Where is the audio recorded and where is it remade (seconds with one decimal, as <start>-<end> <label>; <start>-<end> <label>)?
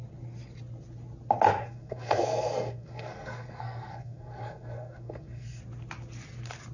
0.0-1.6 recorded; 1.6-5.6 remade; 5.6-6.7 recorded